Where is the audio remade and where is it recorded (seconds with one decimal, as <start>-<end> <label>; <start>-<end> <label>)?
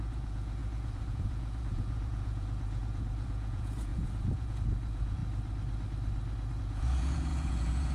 0.0-5.2 remade; 5.2-6.6 recorded; 6.6-7.9 remade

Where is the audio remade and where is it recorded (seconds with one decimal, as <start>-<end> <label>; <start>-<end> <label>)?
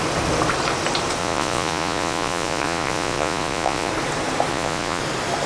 0.0-1.2 recorded; 1.2-3.9 remade; 3.9-4.5 recorded; 4.5-5.0 remade; 5.0-5.5 recorded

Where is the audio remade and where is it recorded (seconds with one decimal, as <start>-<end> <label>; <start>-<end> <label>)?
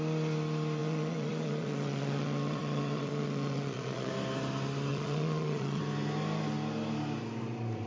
0.0-0.8 recorded; 0.8-4.1 remade; 4.1-4.9 recorded; 4.9-5.8 remade; 5.8-7.9 recorded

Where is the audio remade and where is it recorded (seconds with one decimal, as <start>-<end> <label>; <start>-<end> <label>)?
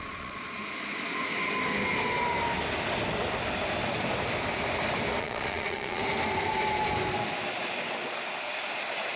0.0-0.6 remade; 0.6-5.2 recorded; 5.2-6.0 remade; 6.0-9.2 recorded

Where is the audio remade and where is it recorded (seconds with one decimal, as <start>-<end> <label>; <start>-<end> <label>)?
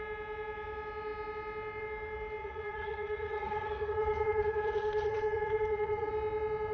0.0-2.4 recorded; 2.4-6.1 remade; 6.1-6.7 recorded